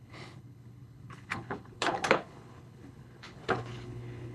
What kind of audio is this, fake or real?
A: fake